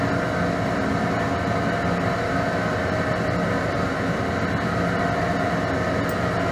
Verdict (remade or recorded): recorded